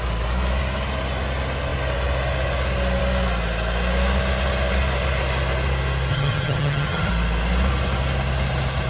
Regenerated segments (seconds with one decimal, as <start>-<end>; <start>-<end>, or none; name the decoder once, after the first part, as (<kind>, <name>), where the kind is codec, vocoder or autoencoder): 6.1-7.1 (vocoder, HiFi-GAN)